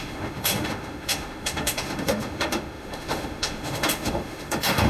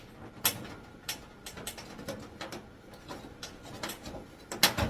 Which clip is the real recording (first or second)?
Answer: second